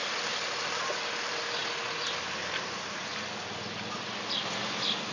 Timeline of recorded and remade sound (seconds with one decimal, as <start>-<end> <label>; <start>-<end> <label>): 0.0-0.6 recorded; 0.6-1.6 remade; 1.6-2.4 recorded; 2.4-5.1 remade